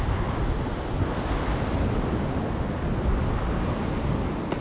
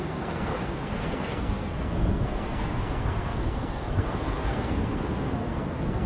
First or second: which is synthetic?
second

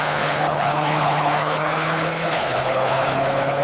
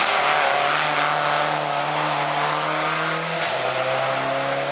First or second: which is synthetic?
first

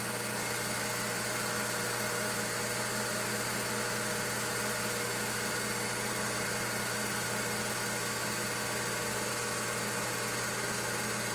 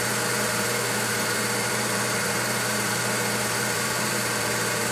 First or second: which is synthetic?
second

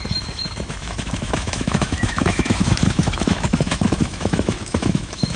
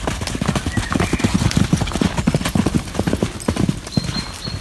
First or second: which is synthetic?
first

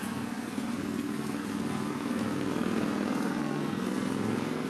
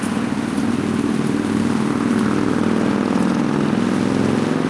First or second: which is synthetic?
first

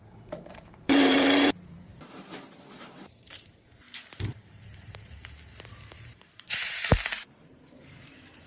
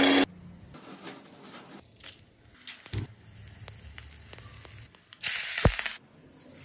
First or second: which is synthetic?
first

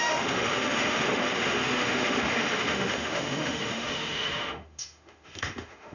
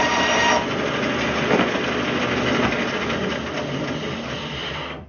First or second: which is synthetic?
first